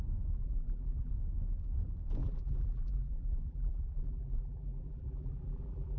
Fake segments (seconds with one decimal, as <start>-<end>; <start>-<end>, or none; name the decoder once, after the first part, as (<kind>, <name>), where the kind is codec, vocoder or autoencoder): 0.4-1.1 (vocoder, BigVGAN v2); 2.2-6.0